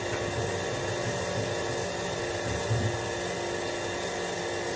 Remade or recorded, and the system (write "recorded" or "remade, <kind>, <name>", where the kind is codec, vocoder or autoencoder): recorded